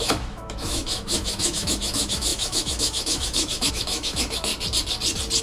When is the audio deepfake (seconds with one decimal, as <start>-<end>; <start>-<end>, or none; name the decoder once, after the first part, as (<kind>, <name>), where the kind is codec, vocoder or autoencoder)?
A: 0.0-4.5 (autoencoder, DAC-VAE)